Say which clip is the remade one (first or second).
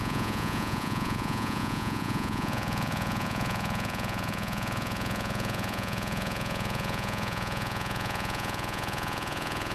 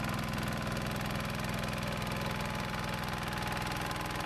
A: first